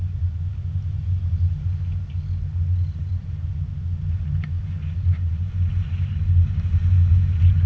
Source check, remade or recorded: recorded